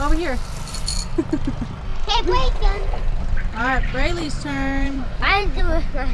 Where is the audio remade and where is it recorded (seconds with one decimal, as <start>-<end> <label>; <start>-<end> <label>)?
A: 0.0-1.9 recorded; 1.9-5.6 remade; 5.6-6.1 recorded